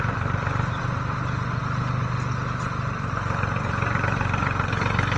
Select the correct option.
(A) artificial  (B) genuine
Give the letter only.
B